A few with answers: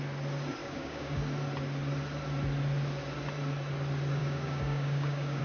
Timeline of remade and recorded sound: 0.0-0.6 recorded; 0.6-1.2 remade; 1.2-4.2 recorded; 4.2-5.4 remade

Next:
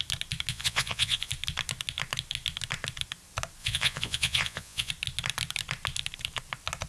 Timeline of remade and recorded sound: 0.0-0.5 recorded; 0.5-1.3 remade; 1.3-3.6 recorded; 3.6-4.9 remade; 4.9-6.9 recorded

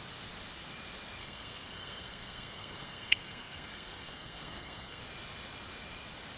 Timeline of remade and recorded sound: 0.0-1.2 recorded; 1.2-5.0 remade; 5.0-6.4 recorded